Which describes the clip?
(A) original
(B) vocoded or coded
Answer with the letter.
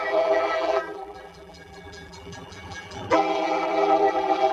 B